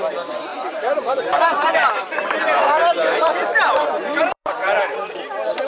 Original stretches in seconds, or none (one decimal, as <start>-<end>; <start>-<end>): 0.0-0.5; 1.2-2.0; 5.3-5.7